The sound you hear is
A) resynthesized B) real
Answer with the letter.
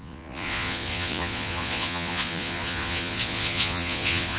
A